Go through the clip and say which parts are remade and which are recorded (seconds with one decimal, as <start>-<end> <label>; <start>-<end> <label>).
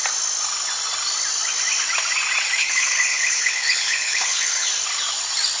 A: 0.0-2.6 recorded; 2.6-4.7 remade; 4.7-5.6 recorded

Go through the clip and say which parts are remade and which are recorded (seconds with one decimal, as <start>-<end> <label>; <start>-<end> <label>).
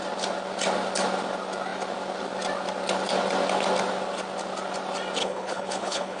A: 0.0-5.2 recorded; 5.2-6.2 remade